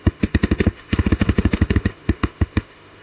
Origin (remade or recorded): remade